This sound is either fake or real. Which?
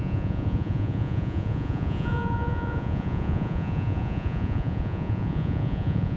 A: fake